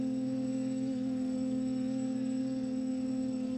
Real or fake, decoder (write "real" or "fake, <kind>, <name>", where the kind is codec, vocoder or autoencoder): fake, codec, SNAC